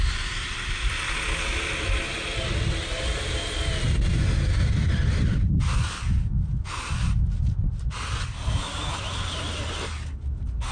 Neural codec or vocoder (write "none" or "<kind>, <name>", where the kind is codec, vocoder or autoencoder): none